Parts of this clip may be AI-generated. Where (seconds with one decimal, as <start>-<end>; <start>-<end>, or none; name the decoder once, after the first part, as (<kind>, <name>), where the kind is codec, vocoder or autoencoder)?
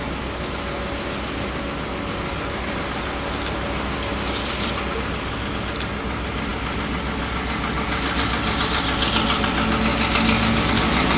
none